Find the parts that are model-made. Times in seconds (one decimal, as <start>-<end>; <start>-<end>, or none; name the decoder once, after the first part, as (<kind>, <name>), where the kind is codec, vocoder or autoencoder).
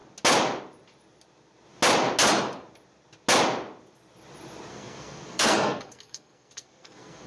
4.7-7.3 (codec, SNAC)